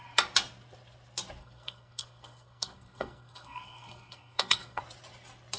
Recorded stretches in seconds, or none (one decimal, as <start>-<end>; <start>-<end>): 0.0-1.4; 4.8-5.6